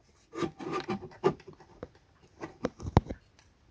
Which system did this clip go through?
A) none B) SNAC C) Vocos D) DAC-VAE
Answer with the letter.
A